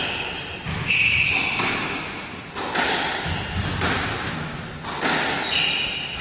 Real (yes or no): yes